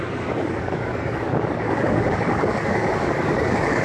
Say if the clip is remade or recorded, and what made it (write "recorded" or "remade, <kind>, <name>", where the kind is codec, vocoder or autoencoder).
remade, codec, DAC